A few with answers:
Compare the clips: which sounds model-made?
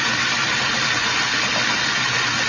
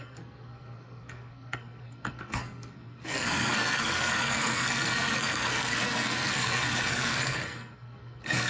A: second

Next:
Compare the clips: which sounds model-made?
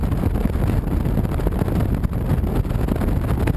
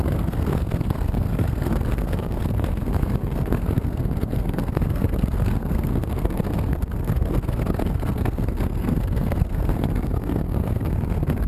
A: second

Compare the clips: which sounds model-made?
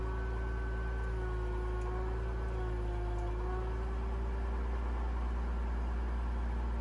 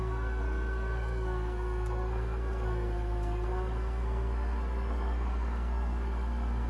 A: second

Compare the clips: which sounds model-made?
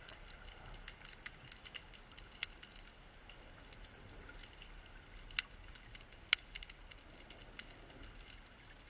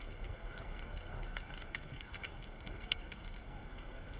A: second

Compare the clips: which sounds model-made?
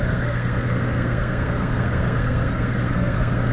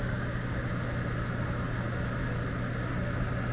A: first